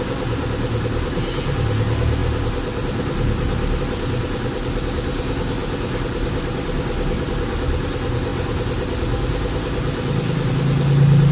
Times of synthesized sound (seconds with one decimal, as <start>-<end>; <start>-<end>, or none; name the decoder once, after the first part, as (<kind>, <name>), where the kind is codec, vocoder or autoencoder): none